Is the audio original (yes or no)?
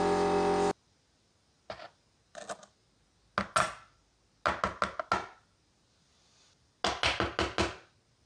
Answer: yes